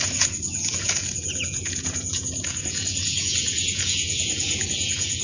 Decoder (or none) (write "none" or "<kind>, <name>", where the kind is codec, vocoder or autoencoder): vocoder, Vocos